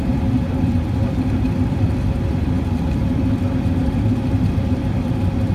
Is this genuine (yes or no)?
no